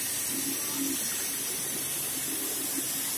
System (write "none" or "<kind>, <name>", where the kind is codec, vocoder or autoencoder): none